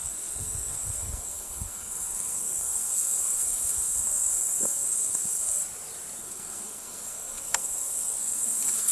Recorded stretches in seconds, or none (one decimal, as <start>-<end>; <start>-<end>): 5.6-6.2